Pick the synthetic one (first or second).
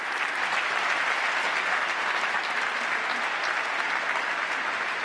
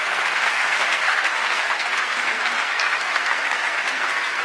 second